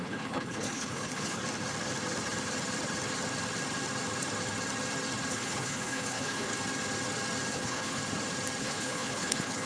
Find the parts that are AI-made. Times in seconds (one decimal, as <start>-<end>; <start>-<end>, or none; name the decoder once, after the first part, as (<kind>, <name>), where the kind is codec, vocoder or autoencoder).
0.0-1.4 (codec, HILCodec); 5.3-6.5; 7.5-8.0; 8.6-9.7